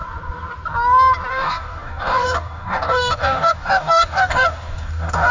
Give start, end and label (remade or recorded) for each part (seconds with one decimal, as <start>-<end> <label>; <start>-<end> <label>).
0.0-1.3 recorded; 1.3-5.3 remade